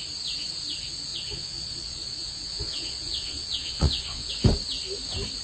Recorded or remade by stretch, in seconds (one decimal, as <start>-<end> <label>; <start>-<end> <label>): 0.0-1.1 recorded; 1.1-4.3 remade; 4.3-5.4 recorded